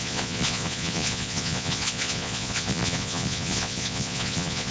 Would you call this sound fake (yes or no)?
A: yes